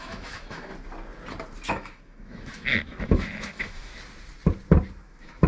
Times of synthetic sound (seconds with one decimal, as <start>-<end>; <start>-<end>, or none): 0.0-0.7; 1.7-3.9; 5.1-5.5